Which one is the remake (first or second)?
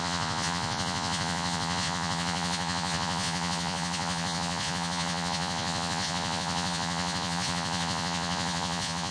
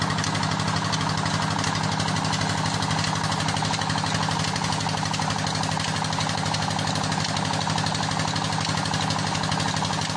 first